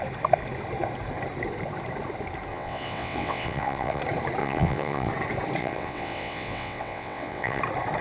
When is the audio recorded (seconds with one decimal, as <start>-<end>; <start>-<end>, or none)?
0.0-2.5; 4.0-4.4; 5.1-5.6; 7.6-8.0